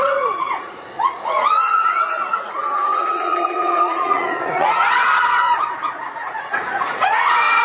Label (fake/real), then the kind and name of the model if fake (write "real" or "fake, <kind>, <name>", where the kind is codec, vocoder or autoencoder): fake, vocoder, Vocos